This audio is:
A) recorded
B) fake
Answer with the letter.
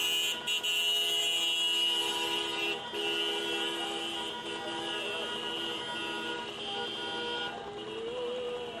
A